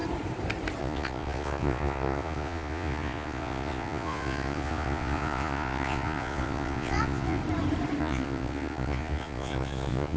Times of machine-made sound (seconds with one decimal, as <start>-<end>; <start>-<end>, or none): 0.8-7.4; 8.0-10.2